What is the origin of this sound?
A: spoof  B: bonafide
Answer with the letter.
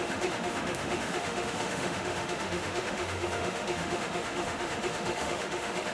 A